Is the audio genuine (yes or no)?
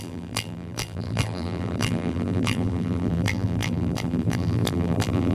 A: no